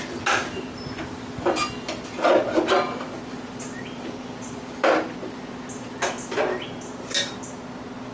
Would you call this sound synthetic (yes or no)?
no